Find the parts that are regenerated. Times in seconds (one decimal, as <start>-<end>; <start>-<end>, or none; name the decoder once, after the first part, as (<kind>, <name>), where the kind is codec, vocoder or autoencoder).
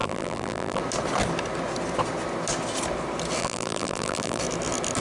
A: 0.0-0.8 (vocoder, BigVGAN v2); 3.4-4.4